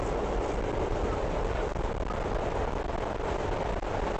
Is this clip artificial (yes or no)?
no